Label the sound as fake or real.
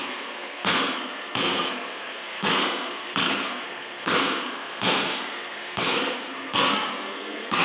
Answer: fake